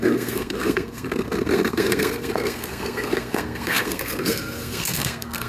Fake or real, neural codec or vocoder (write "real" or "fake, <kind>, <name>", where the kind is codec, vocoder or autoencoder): fake, codec, SNAC